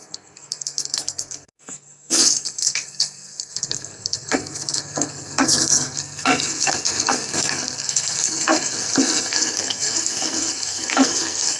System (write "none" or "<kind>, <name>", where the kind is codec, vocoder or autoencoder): codec, SNAC